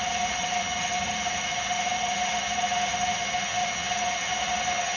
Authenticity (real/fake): fake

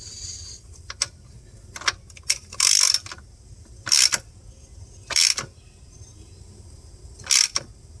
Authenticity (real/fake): real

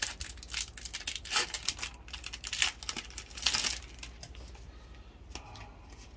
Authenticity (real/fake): real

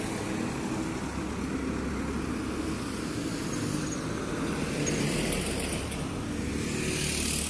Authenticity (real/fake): real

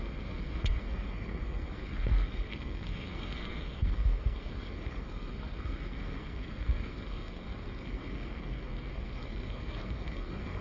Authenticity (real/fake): fake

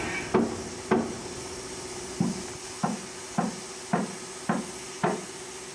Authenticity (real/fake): real